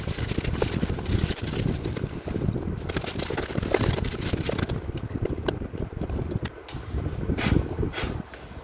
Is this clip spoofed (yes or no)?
no